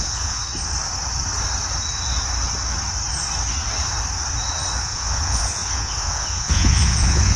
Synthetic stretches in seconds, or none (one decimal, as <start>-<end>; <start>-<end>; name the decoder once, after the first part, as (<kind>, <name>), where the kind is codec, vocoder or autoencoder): 0.0-0.4 (vocoder, Vocos); 4.8-7.4